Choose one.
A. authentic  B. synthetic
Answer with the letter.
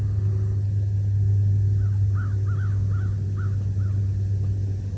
A